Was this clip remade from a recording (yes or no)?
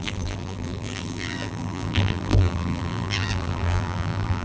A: yes